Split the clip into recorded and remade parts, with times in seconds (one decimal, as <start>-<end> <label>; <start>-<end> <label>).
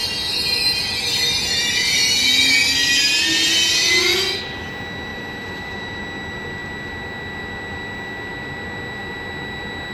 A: 0.0-5.1 recorded; 5.1-6.0 remade; 6.0-9.9 recorded